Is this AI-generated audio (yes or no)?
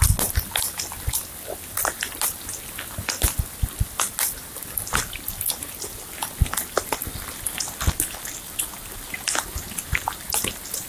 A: no